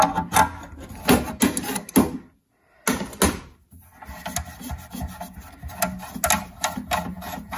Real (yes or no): yes